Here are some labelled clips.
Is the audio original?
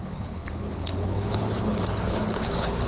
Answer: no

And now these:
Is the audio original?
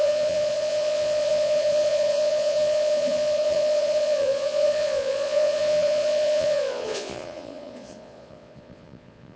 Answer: no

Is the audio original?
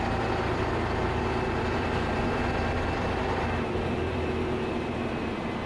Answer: no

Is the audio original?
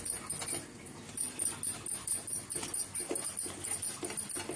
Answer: yes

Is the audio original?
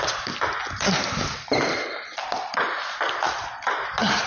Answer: yes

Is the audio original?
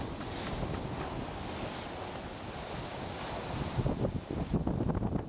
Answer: yes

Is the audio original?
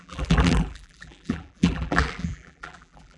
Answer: no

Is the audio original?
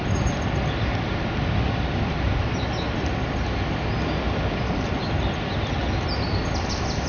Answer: yes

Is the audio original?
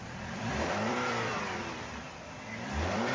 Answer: no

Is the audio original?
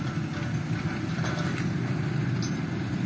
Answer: yes